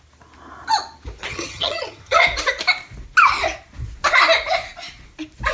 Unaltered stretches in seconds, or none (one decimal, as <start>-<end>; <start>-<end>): 0.0-1.3; 2.2-5.5